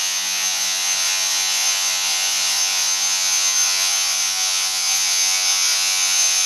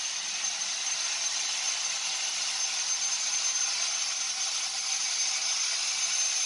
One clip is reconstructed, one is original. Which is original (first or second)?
second